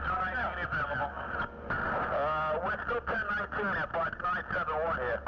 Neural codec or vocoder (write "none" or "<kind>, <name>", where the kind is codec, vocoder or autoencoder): none